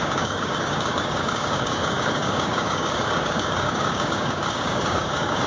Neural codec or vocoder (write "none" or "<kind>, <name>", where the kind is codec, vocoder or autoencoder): codec, DAC